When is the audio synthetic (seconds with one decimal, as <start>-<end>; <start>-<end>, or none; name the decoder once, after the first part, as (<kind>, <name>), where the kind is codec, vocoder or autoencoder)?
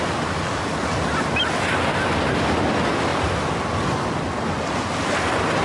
none